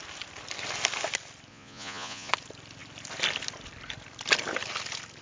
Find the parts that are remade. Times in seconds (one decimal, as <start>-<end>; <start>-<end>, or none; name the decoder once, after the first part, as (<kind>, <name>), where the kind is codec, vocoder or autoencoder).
1.5-2.3 (vocoder, Vocos)